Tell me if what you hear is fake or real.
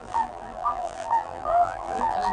fake